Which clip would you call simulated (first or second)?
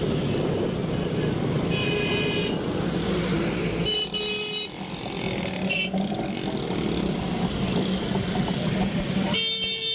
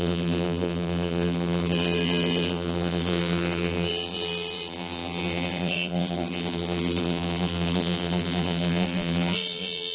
second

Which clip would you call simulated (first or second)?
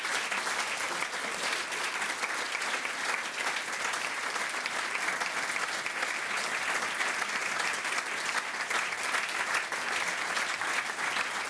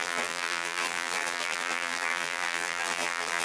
second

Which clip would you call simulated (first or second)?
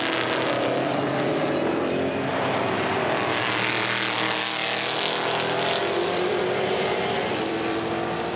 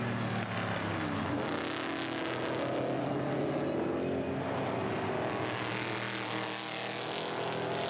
first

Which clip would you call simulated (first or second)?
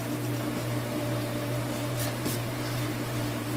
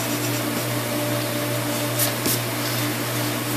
first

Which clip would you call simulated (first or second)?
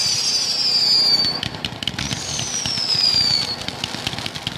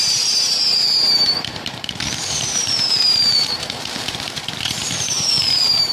second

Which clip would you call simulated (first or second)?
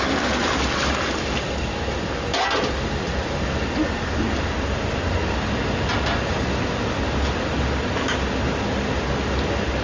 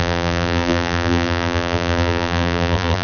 second